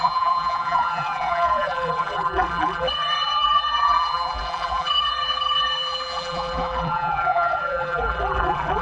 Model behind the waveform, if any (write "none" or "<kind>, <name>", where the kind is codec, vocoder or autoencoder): vocoder, BigVGAN v2